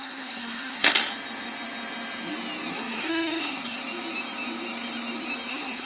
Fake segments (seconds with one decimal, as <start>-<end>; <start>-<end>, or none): 0.0-0.9; 2.7-3.8; 5.5-5.9